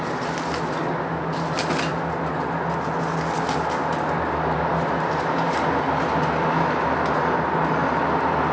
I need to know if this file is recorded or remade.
recorded